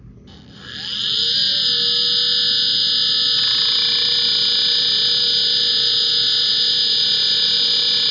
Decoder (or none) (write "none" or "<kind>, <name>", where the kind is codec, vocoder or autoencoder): none